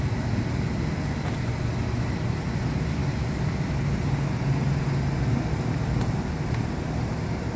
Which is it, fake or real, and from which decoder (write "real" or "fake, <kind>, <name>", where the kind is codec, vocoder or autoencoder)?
real